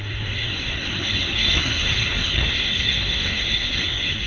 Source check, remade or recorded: remade